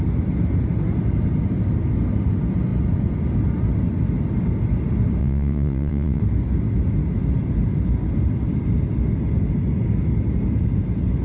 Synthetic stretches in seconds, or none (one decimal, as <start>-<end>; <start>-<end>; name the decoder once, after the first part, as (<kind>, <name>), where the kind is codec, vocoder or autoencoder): 5.2-6.2 (vocoder, WaveNeXt)